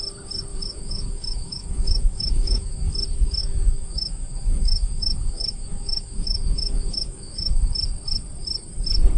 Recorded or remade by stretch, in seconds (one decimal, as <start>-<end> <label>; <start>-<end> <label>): 0.0-0.5 recorded; 0.5-2.9 remade; 2.9-3.4 recorded; 3.4-7.7 remade; 7.7-9.2 recorded